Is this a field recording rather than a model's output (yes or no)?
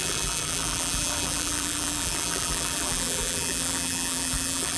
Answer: no